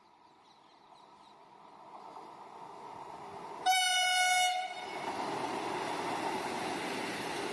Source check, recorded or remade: recorded